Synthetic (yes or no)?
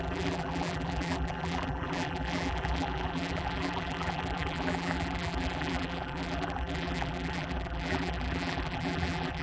yes